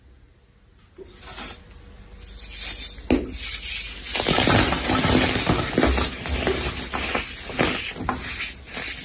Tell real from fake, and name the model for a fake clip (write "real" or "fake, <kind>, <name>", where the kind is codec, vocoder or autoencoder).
real